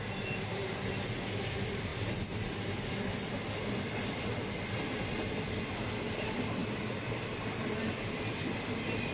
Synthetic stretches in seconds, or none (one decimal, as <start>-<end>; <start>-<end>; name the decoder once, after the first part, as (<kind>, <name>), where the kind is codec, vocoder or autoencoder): none